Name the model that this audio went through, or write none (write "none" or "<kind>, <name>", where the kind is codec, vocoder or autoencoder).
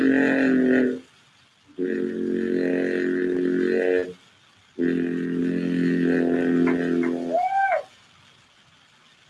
none